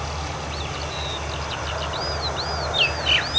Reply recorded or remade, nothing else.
recorded